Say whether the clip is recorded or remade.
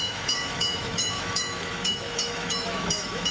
remade